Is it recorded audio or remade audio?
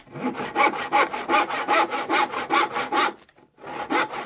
recorded